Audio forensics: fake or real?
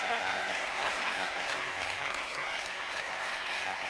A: fake